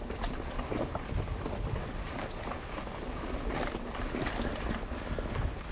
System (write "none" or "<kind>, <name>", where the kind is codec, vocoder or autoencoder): none